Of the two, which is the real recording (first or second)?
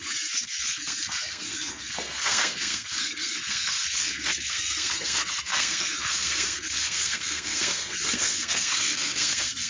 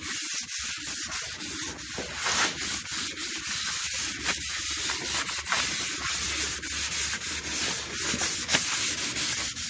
second